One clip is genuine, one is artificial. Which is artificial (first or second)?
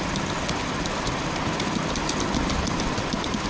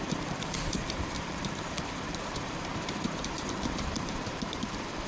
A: second